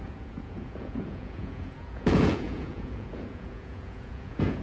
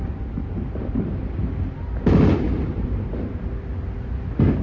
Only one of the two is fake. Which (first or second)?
first